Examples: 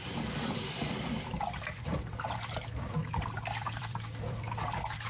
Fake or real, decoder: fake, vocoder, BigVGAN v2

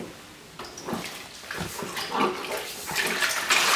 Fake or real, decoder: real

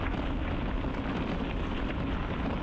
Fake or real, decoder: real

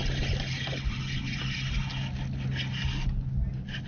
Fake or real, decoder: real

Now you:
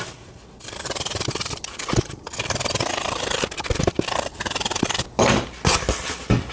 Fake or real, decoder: real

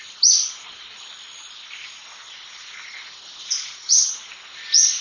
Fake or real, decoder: real